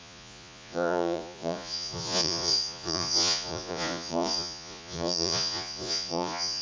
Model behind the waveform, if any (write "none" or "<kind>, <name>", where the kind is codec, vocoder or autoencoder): vocoder, Vocos